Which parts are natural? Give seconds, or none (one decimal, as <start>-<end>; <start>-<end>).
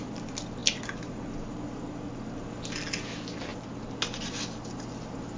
0.0-5.4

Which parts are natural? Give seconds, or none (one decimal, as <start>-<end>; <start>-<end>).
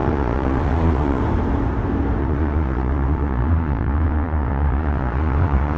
1.2-2.2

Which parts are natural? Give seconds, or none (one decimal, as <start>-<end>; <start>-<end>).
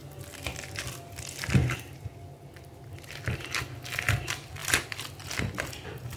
0.0-1.6; 3.1-6.2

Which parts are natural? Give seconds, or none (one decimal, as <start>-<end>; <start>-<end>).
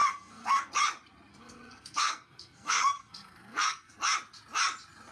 0.7-1.3; 4.0-5.1